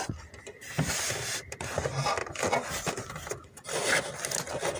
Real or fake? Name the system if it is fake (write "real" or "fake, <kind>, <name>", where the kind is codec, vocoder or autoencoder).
real